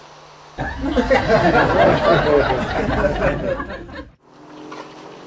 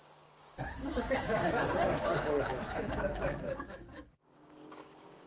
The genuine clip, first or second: first